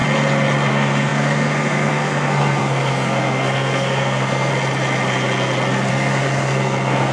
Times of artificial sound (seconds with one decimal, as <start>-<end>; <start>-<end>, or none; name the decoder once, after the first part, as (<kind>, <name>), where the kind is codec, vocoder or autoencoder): 0.7-4.5 (codec, SNAC); 5.9-7.1